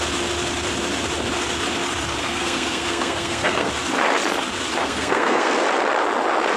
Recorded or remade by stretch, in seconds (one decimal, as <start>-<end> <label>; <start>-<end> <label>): 0.0-2.2 recorded; 2.2-3.7 remade; 3.7-4.8 recorded; 4.8-5.5 remade; 5.5-6.6 recorded